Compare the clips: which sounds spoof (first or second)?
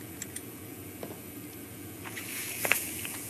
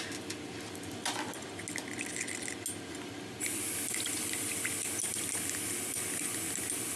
first